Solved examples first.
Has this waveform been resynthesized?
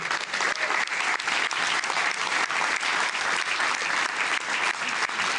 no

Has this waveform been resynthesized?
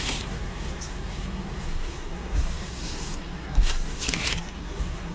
yes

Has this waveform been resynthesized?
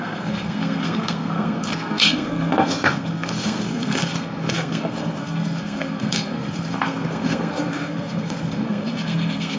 yes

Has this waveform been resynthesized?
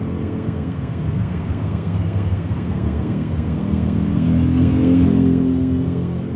yes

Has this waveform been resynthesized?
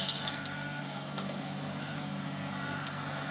yes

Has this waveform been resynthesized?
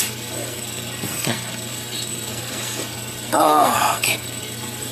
yes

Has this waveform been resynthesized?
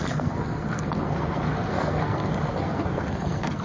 yes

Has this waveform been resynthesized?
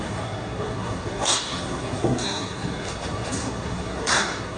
yes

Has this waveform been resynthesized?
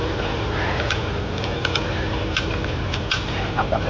no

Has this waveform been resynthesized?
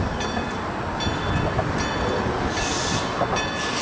no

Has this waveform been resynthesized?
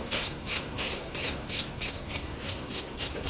yes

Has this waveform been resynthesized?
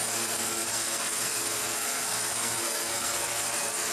yes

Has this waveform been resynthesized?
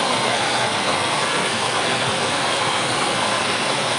yes